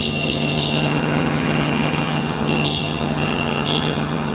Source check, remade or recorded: remade